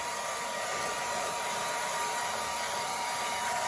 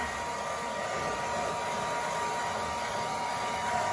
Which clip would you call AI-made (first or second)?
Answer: first